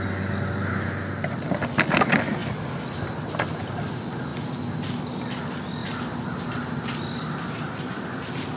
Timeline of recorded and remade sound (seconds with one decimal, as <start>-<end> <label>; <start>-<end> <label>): 0.0-5.8 recorded; 5.8-7.9 remade; 7.9-8.6 recorded